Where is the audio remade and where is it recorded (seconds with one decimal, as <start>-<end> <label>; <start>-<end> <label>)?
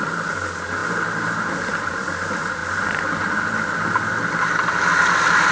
0.0-5.5 recorded